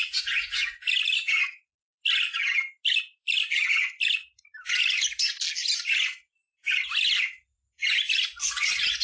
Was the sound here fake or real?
real